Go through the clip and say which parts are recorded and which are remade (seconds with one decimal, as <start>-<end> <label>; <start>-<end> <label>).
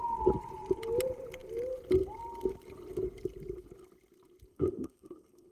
0.0-4.5 recorded; 4.5-5.5 remade